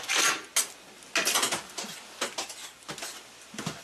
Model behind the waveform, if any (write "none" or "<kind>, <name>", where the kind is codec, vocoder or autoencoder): none